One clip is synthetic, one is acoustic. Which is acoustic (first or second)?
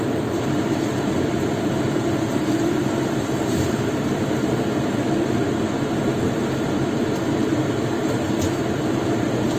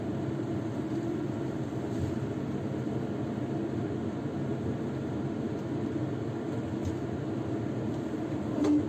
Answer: second